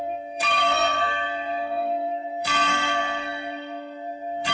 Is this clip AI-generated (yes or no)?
yes